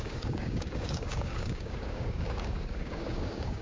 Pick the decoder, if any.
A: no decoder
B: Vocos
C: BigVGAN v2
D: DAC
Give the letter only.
D